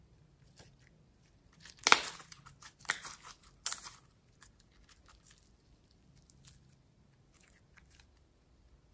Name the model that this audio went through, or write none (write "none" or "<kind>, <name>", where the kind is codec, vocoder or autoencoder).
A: none